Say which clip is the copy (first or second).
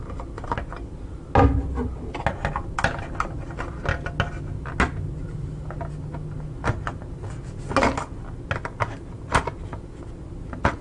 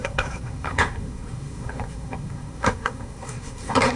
second